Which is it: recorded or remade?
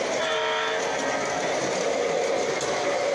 recorded